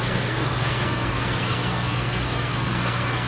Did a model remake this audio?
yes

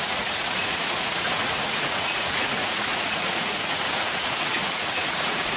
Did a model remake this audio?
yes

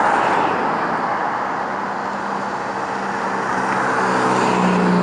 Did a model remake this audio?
no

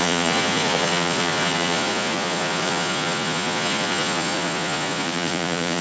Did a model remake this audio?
yes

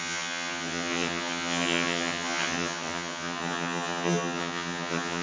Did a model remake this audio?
yes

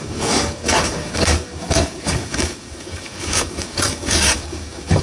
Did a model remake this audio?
yes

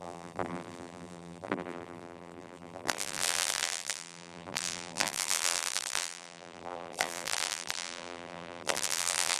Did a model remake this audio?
yes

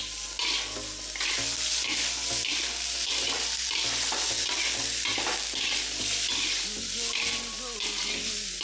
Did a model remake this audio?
no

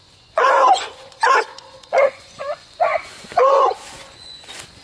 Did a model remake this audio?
yes